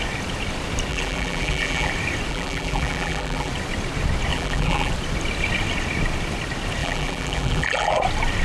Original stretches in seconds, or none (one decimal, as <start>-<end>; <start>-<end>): 0.0-0.9; 1.9-2.3; 3.5-4.3; 4.9-6.8; 8.0-8.4